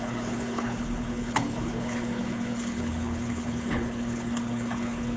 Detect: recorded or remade remade